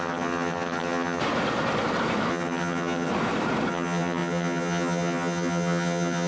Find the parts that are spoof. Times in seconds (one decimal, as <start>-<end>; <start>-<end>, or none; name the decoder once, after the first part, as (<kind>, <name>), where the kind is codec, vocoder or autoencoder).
0.0-1.2 (vocoder, HiFi-GAN); 2.3-3.1; 3.7-6.3